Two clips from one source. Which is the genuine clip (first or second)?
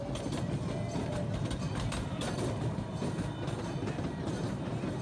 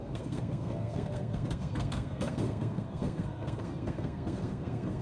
first